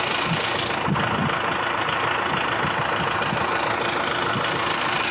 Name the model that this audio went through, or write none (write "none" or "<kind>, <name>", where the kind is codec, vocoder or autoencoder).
none